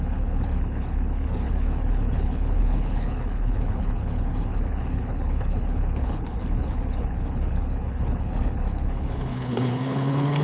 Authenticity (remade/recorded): remade